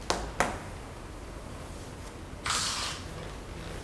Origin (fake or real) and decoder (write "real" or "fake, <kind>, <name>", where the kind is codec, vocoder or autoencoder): real